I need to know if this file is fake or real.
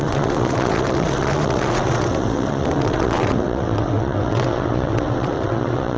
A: fake